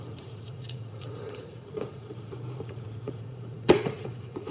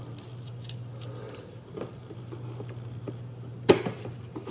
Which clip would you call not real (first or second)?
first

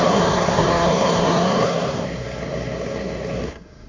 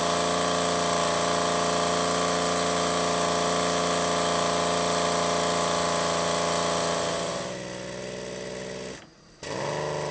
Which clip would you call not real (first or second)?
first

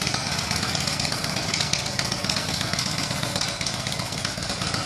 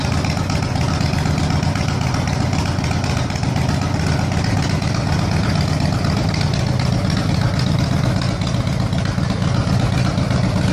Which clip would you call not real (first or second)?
first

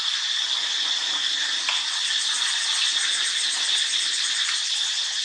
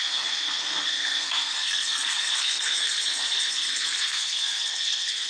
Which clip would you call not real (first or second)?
second